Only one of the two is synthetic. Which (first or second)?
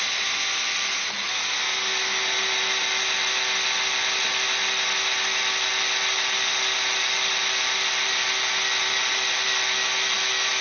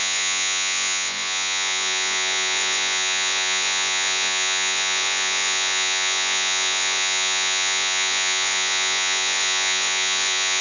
second